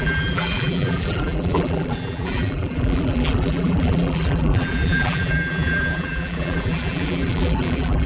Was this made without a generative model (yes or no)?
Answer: no